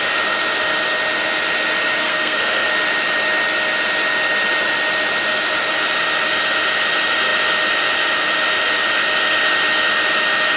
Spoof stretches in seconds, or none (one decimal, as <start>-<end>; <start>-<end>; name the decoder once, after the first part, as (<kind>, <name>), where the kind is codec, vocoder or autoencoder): 2.0-2.7 (codec, SNAC)

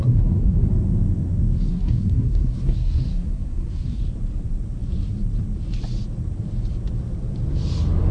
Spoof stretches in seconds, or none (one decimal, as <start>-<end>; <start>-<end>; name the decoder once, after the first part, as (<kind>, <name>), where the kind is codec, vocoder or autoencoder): 0.0-0.7 (codec, SNAC); 1.7-4.0

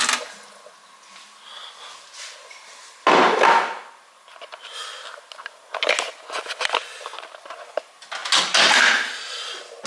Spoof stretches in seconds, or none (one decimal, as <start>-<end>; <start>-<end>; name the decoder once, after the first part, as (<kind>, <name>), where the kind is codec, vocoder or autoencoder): none

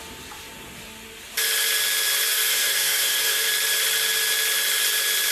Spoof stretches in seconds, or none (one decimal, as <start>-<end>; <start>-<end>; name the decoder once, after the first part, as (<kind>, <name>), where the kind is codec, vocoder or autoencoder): 2.3-3.5 (codec, SNAC)

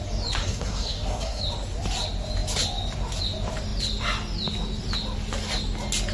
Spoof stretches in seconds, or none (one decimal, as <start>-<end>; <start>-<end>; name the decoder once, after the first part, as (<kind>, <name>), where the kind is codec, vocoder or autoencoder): 0.4-1.4 (codec, SNAC)

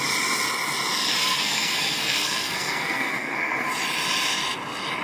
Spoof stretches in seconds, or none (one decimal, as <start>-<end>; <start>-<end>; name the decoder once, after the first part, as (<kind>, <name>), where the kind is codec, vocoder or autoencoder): 1.2-3.7 (codec, SNAC)

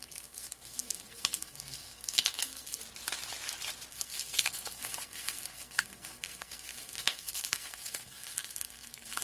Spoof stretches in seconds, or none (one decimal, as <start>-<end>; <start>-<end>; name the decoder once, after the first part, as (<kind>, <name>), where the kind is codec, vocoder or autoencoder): 0.0-2.8 (codec, SNAC); 3.9-9.2